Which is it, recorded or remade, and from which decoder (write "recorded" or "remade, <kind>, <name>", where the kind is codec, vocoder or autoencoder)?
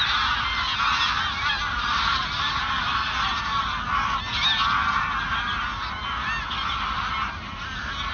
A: recorded